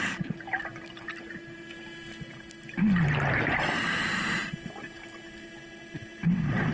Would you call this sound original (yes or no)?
yes